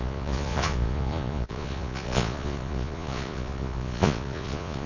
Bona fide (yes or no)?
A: no